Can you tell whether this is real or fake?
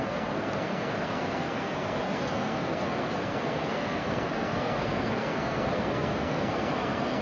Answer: fake